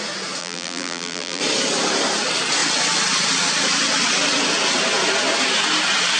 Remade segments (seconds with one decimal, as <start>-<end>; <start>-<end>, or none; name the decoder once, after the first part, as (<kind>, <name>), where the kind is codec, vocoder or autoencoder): 0.4-1.4 (vocoder, BigVGAN v2)